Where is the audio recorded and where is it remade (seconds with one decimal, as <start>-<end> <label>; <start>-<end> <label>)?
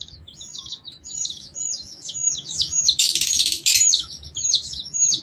0.0-5.2 remade